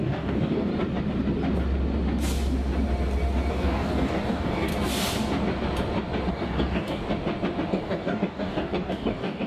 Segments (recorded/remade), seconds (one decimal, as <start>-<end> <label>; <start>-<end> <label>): 0.0-0.7 remade; 0.7-3.5 recorded; 3.5-4.7 remade; 4.7-6.3 recorded; 6.3-7.0 remade; 7.0-7.7 recorded; 7.7-9.5 remade